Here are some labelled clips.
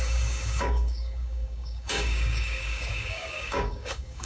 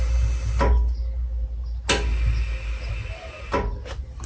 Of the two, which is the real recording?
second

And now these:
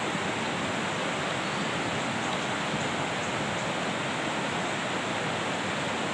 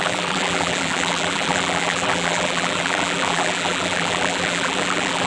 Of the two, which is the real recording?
first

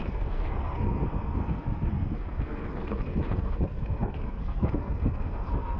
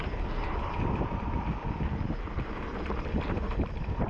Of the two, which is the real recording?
second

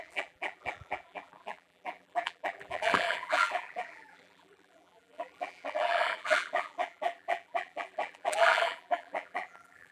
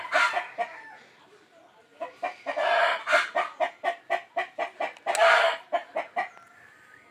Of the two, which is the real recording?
second